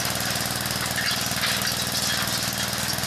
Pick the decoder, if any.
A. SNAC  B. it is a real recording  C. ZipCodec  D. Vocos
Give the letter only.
B